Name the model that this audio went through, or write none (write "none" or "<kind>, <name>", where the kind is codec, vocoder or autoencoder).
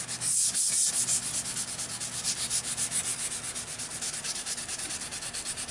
none